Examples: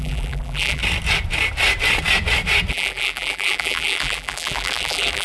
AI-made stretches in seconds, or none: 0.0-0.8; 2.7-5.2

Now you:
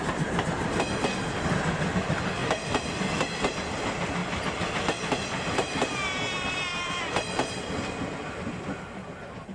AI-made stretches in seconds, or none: 2.4-3.1; 4.2-7.0

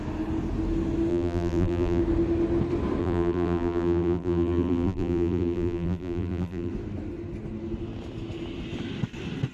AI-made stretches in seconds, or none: 1.1-2.0; 3.0-6.7

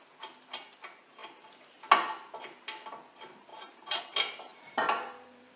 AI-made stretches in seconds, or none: 3.5-4.0; 4.5-5.6

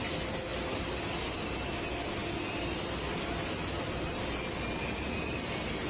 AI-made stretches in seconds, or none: none

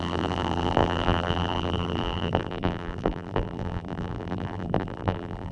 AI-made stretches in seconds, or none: 0.0-5.5

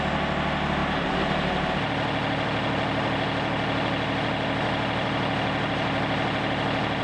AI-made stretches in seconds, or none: 0.8-1.7